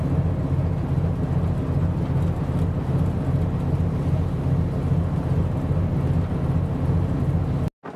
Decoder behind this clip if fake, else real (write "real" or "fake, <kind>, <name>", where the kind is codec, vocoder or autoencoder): real